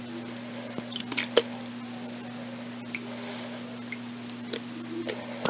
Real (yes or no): yes